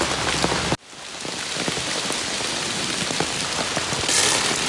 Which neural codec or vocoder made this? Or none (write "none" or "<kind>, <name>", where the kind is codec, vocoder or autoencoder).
none